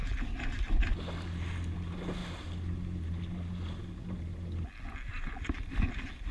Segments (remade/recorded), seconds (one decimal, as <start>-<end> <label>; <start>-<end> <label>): 0.0-6.3 recorded